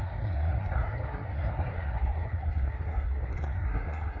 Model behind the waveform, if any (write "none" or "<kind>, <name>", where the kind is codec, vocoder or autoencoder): codec, SNAC